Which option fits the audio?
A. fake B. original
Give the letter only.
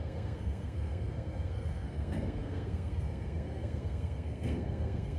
A